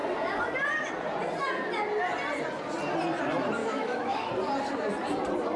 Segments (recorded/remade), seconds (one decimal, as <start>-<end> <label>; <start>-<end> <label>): 0.0-3.6 recorded; 3.6-4.3 remade; 4.3-5.6 recorded